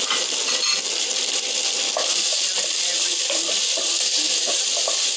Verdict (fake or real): fake